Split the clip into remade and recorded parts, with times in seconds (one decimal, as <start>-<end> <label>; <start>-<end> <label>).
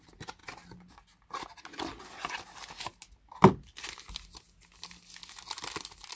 0.0-6.1 recorded